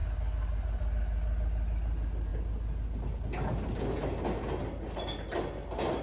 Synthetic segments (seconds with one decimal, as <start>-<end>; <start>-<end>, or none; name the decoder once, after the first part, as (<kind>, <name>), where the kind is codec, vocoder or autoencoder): none